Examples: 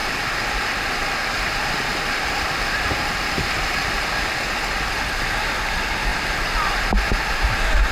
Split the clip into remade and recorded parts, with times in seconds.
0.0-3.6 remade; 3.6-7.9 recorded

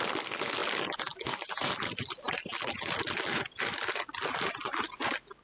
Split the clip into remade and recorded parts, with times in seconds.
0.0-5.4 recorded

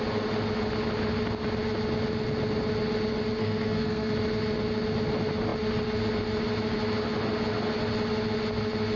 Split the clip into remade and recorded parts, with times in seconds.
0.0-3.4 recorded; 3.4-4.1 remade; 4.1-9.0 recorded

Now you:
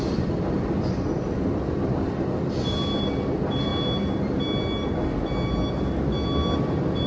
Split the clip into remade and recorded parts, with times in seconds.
0.0-3.7 remade; 3.7-6.6 recorded; 6.6-7.1 remade

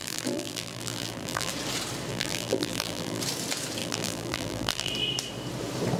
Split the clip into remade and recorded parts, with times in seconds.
0.0-1.5 remade; 1.5-2.1 recorded; 2.1-3.2 remade; 3.2-3.8 recorded; 3.8-4.9 remade; 4.9-6.0 recorded